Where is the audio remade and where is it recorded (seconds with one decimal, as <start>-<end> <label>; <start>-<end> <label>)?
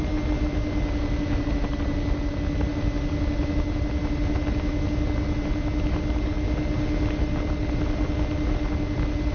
0.0-9.3 recorded